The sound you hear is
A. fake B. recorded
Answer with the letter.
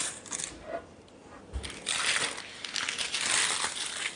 B